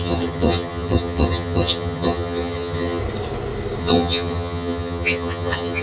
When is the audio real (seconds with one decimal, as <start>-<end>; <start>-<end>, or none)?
3.0-3.8